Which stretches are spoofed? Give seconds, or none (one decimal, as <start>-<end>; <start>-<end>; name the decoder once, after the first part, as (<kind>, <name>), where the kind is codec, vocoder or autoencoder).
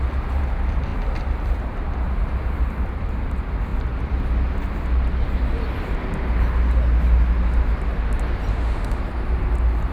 8.5-9.0 (autoencoder, DAC-VAE)